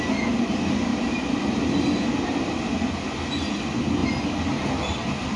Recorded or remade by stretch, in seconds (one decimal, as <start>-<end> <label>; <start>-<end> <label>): 0.0-0.9 recorded; 0.9-1.4 remade; 1.4-5.4 recorded